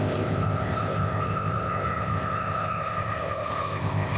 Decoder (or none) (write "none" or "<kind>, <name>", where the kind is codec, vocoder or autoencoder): codec, ZipCodec